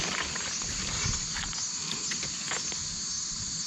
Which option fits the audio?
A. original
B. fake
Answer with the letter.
A